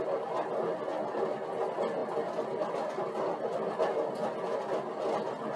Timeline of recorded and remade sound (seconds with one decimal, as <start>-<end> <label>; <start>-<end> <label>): 0.0-5.6 recorded